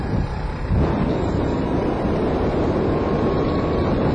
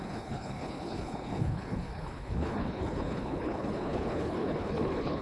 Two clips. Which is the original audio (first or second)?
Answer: first